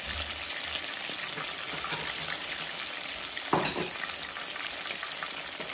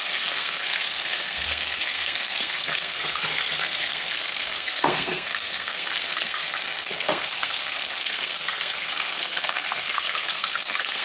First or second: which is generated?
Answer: second